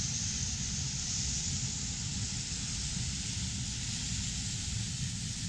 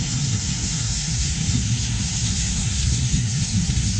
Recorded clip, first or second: first